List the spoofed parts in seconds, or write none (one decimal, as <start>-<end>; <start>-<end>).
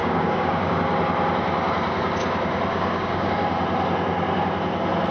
0.0-0.8; 2.7-3.3